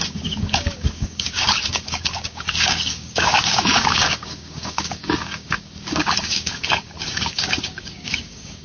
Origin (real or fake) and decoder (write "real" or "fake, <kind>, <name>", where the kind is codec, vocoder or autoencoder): fake, codec, DAC